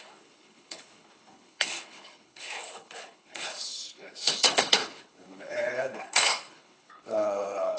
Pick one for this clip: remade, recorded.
remade